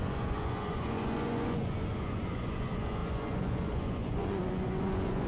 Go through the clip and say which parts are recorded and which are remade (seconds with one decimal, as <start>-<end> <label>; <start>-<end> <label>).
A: 0.0-5.3 remade